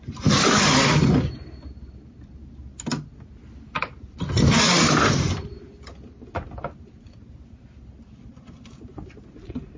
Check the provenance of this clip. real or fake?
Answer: real